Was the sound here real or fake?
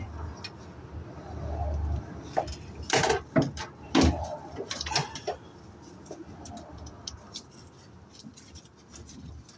real